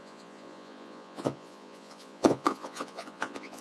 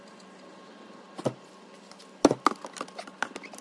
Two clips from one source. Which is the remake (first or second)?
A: first